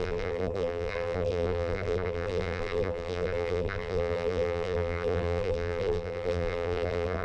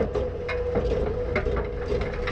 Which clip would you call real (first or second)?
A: second